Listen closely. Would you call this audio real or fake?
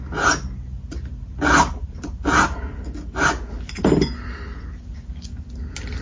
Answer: real